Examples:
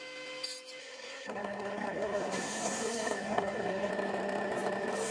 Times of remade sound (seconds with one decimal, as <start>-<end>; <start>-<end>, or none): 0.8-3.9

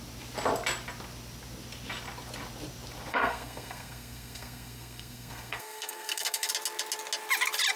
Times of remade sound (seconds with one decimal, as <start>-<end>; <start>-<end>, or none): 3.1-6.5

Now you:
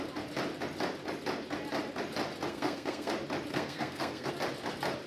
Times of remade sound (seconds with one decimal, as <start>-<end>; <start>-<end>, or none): 2.5-3.1; 3.5-4.3